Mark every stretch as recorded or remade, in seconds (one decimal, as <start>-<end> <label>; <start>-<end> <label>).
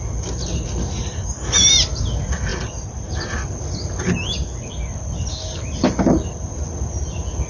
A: 0.0-7.5 recorded